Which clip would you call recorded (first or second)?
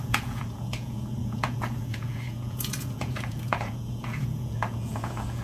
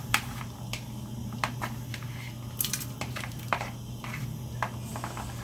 second